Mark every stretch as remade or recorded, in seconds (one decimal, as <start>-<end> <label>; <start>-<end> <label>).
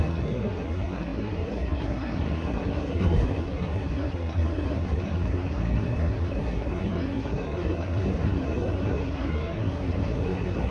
0.0-10.7 remade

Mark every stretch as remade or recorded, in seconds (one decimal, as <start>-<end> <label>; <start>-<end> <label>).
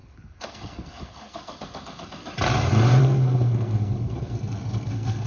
0.0-2.2 remade; 2.2-3.0 recorded; 3.0-5.3 remade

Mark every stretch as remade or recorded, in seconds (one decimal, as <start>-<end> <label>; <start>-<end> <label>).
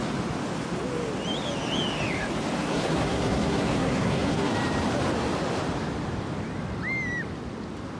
0.0-2.6 recorded; 2.6-4.5 remade; 4.5-8.0 recorded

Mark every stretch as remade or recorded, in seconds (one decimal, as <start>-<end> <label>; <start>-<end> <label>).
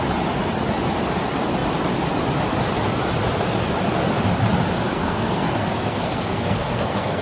0.0-4.9 recorded; 4.9-7.2 remade